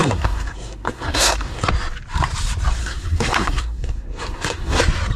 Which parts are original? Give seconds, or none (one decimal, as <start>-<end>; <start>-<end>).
1.7-2.8; 4.8-5.2